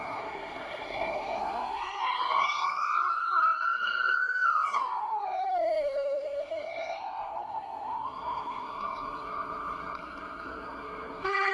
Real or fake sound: fake